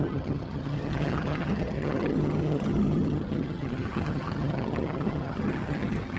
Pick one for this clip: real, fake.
fake